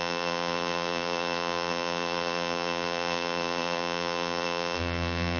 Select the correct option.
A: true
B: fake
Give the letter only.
B